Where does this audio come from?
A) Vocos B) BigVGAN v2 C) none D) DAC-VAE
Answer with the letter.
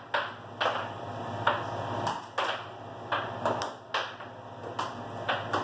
C